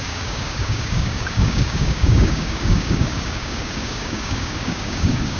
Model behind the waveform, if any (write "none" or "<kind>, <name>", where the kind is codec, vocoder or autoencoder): codec, DAC